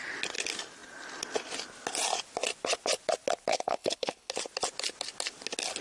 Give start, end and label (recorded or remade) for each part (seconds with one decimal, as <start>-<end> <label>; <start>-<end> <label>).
0.0-3.5 recorded; 3.5-4.3 remade; 4.3-5.8 recorded